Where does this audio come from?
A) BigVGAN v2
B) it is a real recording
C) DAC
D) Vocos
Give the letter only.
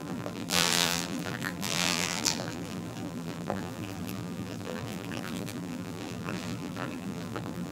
A